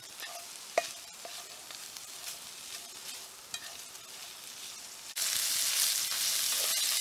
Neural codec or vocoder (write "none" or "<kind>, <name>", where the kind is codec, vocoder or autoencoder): none